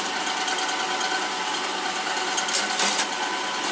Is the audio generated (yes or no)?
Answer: no